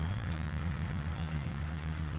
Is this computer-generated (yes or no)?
yes